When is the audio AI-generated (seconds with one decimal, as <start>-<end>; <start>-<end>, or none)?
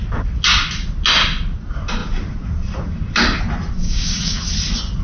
3.8-4.4